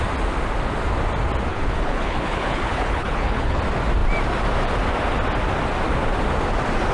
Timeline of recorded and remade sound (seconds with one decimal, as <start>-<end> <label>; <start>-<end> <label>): 0.0-1.5 recorded; 1.5-3.6 remade; 3.6-6.9 recorded